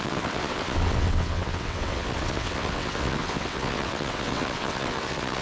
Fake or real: fake